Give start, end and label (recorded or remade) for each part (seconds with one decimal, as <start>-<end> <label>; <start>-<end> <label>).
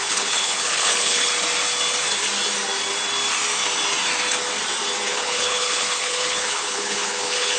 0.0-1.3 remade; 1.3-5.1 recorded; 5.1-7.6 remade